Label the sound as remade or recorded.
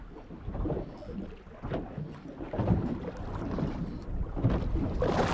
recorded